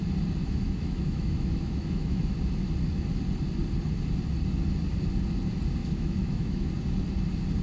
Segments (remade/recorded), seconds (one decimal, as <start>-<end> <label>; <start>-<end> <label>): 0.0-0.4 recorded; 0.4-2.3 remade; 2.3-5.8 recorded; 5.8-6.7 remade; 6.7-7.6 recorded